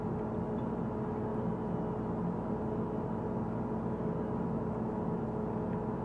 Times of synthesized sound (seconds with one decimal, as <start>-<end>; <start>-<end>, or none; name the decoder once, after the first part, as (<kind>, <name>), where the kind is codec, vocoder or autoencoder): none